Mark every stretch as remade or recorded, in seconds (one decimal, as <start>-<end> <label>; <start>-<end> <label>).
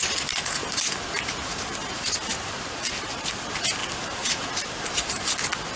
0.0-5.8 recorded